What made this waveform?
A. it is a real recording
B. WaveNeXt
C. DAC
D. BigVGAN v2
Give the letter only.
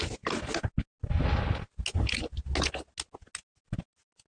A